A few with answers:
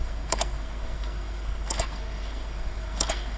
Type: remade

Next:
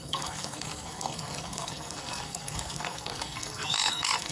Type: remade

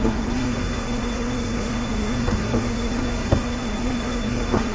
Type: remade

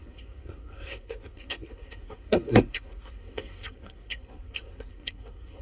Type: remade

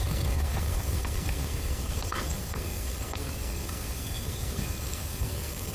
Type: remade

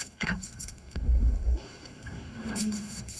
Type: remade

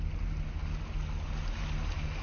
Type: recorded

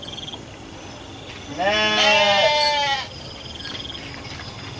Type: recorded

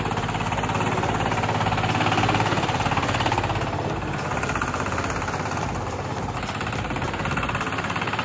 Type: recorded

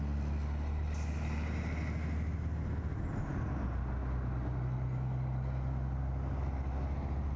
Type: recorded